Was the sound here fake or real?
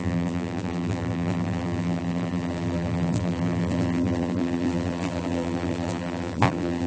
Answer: fake